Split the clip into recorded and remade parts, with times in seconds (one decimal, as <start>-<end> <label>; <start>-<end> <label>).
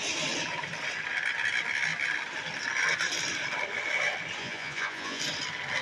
0.0-4.4 recorded; 4.4-5.2 remade; 5.2-5.8 recorded